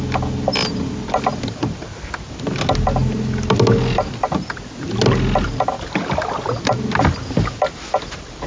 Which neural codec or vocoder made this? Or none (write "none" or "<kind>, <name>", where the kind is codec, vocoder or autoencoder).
none